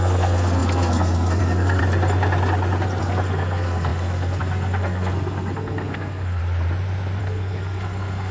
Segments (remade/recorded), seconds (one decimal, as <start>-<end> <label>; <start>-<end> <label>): 0.0-1.8 remade; 1.8-3.0 recorded; 3.0-6.4 remade; 6.4-7.2 recorded; 7.2-8.3 remade

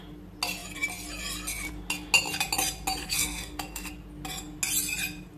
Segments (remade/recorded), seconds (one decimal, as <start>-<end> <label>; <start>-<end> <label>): 0.0-3.0 recorded; 3.0-3.9 remade; 3.9-5.4 recorded

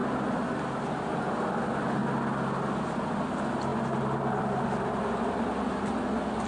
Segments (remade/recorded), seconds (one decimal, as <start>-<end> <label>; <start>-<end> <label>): 0.0-2.0 recorded; 2.0-2.6 remade; 2.6-3.7 recorded; 3.7-4.6 remade; 4.6-6.5 recorded

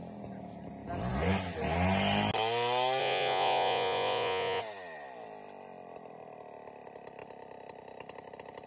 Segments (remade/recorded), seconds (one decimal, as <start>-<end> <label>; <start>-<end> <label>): 0.0-3.0 recorded; 3.0-4.6 remade; 4.6-8.7 recorded

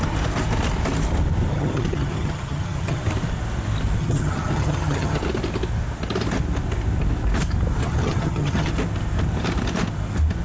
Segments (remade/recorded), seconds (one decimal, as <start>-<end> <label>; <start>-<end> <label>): 0.0-1.5 recorded; 1.5-3.0 remade; 3.0-4.0 recorded; 4.0-5.2 remade; 5.2-7.8 recorded; 7.8-8.7 remade; 8.7-10.4 recorded

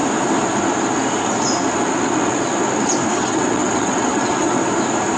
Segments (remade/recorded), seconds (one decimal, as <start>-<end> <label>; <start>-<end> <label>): 0.0-3.1 recorded; 3.1-4.6 remade; 4.6-5.2 recorded